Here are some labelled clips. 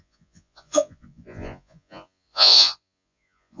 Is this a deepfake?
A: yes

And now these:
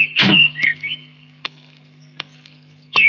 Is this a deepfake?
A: yes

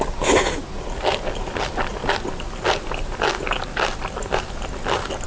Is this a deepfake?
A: no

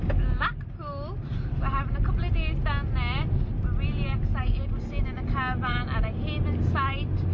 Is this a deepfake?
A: no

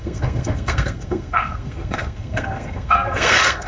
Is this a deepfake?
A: yes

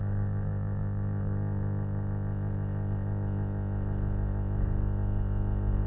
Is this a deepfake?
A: yes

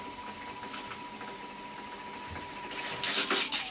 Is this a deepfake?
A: no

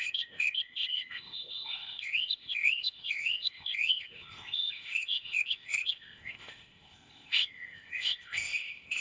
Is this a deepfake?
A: yes